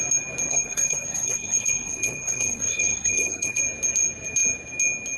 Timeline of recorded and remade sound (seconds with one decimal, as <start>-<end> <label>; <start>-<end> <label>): 0.0-0.5 recorded; 0.5-3.6 remade; 3.6-5.2 recorded